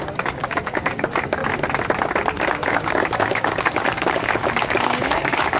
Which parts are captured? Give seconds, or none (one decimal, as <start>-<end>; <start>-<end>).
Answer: 1.4-2.5